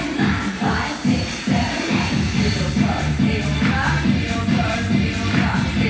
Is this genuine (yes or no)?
no